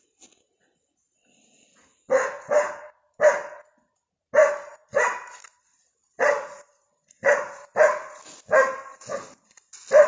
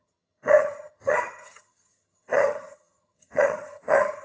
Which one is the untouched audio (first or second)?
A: first